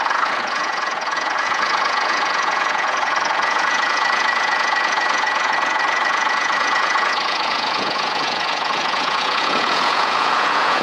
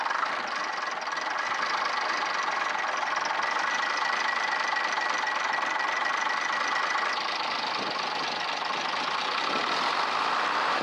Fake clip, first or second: first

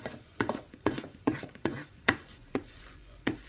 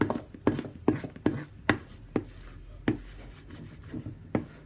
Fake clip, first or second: first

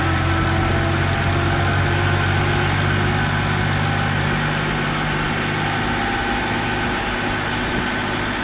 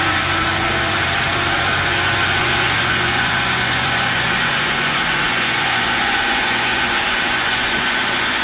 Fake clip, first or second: second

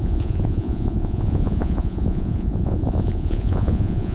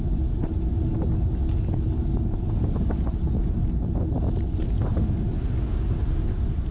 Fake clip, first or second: first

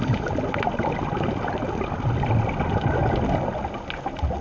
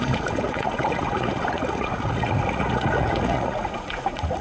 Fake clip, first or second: second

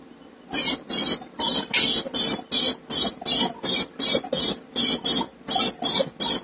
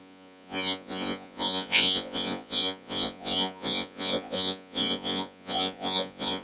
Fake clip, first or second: second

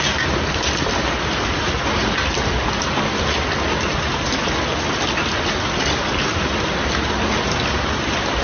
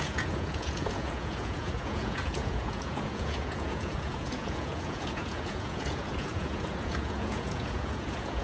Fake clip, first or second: second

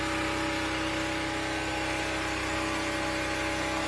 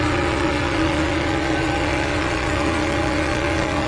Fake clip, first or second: second